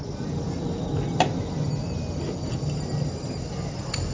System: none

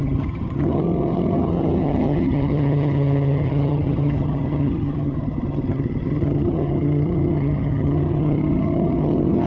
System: vocoder, HiFi-GAN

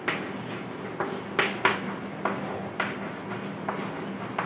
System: none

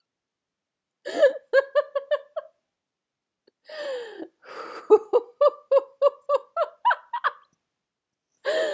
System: none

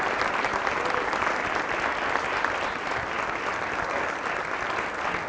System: none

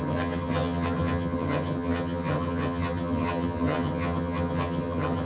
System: vocoder, HiFi-GAN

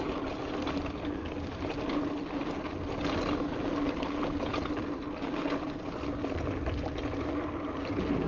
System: none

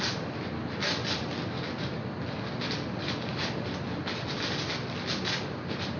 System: none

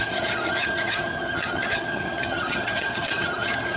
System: vocoder, HiFi-GAN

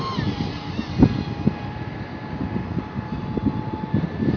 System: none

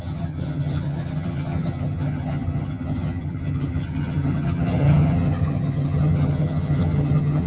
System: vocoder, HiFi-GAN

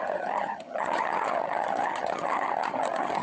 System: vocoder, HiFi-GAN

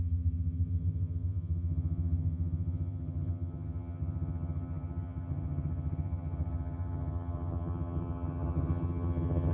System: vocoder, HiFi-GAN